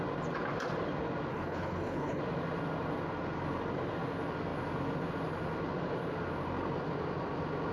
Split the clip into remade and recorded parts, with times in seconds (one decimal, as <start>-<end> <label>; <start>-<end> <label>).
0.0-1.3 recorded; 1.3-2.2 remade; 2.2-7.7 recorded